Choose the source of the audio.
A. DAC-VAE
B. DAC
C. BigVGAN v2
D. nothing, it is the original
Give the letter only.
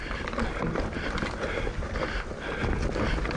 D